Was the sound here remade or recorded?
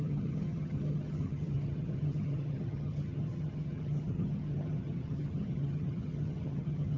remade